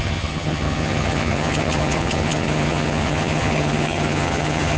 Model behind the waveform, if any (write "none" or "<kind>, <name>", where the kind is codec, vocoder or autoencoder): vocoder, HiFi-GAN